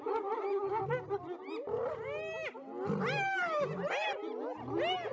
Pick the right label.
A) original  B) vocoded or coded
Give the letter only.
A